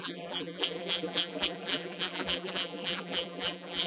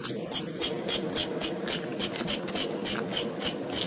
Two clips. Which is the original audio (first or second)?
second